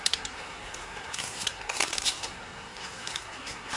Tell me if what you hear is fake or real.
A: fake